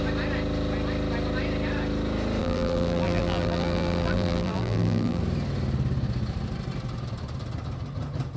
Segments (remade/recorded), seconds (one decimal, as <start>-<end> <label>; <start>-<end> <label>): 0.0-2.4 recorded; 2.4-5.2 remade; 5.2-8.4 recorded